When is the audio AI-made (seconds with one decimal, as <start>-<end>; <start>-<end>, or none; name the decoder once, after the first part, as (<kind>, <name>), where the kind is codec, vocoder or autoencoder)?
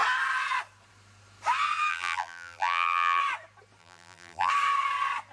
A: 1.9-3.2 (vocoder, BigVGAN v2); 3.8-4.5